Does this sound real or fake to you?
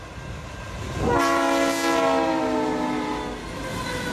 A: real